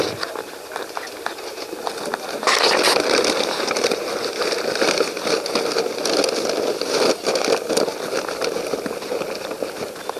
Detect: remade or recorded recorded